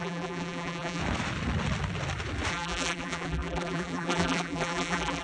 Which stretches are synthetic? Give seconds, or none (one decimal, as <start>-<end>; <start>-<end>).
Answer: 0.0-1.0; 2.5-5.2

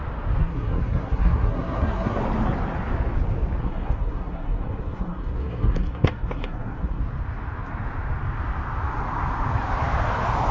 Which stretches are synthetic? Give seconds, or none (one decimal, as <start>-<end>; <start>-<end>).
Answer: 0.4-2.2; 3.6-7.0

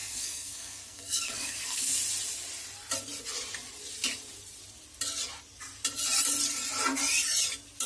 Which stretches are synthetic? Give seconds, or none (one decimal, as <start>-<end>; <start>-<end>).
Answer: 0.0-1.9